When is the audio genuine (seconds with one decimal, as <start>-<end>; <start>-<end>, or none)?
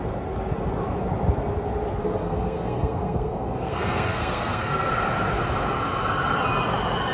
0.0-2.0; 4.9-7.1